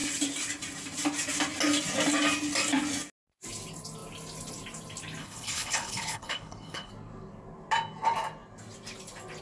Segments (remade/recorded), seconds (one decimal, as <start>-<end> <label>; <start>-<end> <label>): 0.0-5.2 recorded; 5.2-6.9 remade; 6.9-9.4 recorded